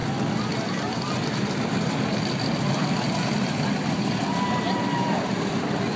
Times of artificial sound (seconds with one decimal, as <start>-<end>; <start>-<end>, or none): 0.5-6.0